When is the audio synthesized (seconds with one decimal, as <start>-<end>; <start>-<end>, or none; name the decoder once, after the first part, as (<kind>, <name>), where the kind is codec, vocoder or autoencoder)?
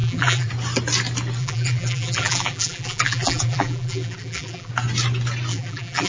0.0-0.5 (vocoder, BigVGAN v2); 1.4-4.7; 5.5-6.1